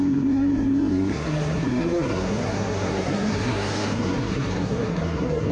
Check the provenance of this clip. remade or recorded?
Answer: remade